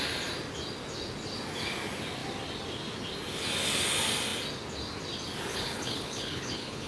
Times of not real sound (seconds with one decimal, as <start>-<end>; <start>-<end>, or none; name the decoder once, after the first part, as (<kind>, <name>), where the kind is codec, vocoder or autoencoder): 5.5-6.9 (codec, HILCodec)